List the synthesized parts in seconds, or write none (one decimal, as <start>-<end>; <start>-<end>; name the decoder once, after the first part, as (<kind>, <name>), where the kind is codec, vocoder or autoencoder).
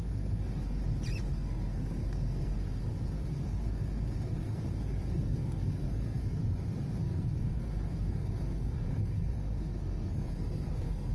0.0-0.8 (codec, SNAC); 1.3-6.4; 7.0-11.1